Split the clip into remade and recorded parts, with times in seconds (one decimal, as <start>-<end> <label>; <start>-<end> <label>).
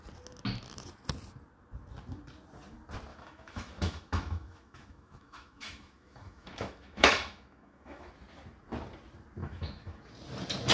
0.0-3.1 recorded; 3.1-8.1 remade; 8.1-9.4 recorded; 9.4-10.1 remade; 10.1-10.7 recorded